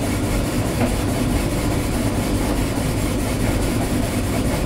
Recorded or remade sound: remade